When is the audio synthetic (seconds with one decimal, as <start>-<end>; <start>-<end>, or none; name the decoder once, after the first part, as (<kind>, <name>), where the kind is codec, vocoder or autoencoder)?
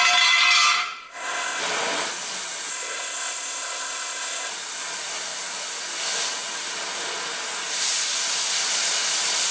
1.0-1.6 (codec, ZipCodec); 2.7-4.5